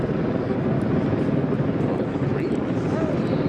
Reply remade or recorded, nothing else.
recorded